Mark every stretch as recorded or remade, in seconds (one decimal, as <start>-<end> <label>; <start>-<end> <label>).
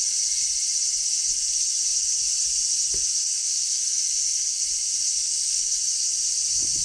0.0-3.2 recorded; 3.2-4.6 remade; 4.6-5.1 recorded; 5.1-5.8 remade; 5.8-6.8 recorded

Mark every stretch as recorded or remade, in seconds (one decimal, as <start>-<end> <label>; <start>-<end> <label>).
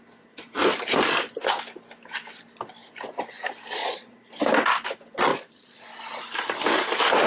0.0-3.8 recorded; 3.8-4.3 remade; 4.3-5.3 recorded; 5.3-5.8 remade; 5.8-7.3 recorded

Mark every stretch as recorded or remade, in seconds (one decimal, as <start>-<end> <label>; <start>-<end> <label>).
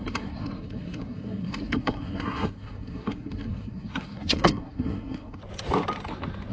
0.0-5.4 remade; 5.4-6.5 recorded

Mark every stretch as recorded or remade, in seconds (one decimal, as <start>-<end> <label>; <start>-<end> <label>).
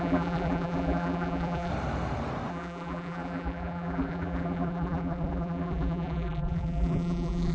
0.0-1.7 remade; 1.7-2.5 recorded; 2.5-7.5 remade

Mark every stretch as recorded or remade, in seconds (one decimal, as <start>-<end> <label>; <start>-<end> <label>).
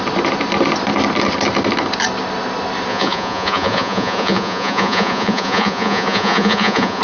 0.0-2.9 recorded; 2.9-7.0 remade